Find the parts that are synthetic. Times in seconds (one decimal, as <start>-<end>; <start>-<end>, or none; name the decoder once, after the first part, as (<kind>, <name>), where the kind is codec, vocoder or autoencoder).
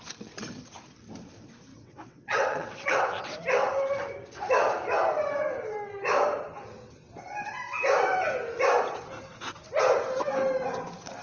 1.7-3.4 (vocoder, WaveNeXt)